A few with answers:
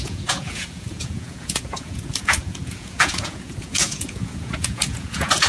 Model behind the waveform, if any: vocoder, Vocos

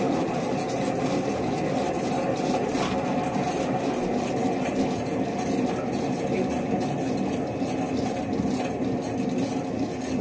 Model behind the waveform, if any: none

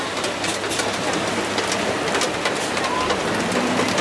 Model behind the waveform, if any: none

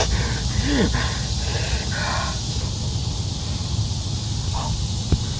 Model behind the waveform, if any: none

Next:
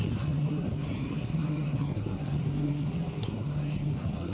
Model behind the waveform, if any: codec, SNAC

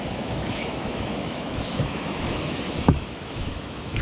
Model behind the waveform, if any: autoencoder, DAC-VAE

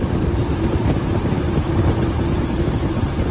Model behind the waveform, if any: none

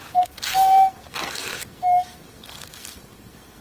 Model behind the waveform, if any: codec, SNAC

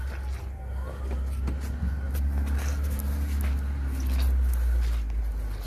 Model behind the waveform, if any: none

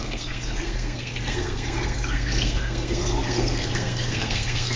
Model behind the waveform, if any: codec, SNAC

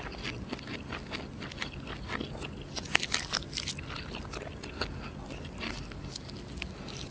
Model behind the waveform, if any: none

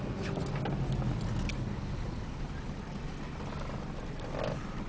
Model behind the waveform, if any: none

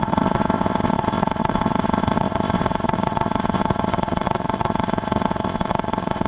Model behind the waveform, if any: codec, ZipCodec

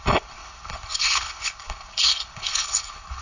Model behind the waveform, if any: codec, HILCodec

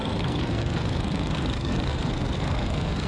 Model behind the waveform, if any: codec, SNAC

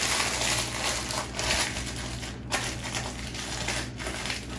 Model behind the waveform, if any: none